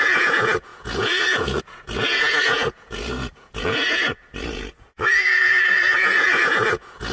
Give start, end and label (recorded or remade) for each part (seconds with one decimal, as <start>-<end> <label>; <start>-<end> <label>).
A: 0.0-7.1 remade